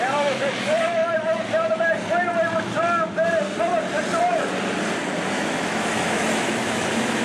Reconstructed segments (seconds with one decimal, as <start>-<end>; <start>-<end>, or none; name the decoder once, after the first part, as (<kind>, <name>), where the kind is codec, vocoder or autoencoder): 0.0-1.0 (autoencoder, DAC-VAE); 5.3-7.2